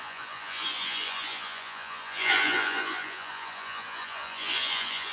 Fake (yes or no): yes